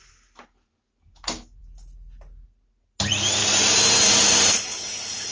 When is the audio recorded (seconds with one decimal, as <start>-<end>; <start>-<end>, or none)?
0.0-5.3